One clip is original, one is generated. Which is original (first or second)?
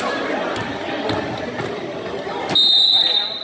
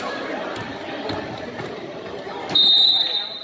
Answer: first